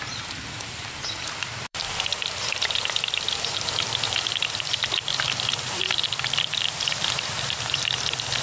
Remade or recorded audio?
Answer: remade